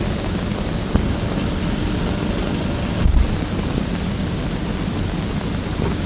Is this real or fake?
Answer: real